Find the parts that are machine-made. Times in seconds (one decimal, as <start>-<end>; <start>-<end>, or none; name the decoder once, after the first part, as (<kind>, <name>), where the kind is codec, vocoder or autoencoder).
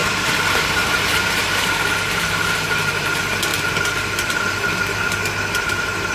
0.0-2.9 (vocoder, BigVGAN v2)